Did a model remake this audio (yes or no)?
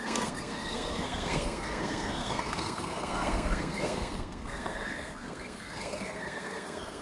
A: yes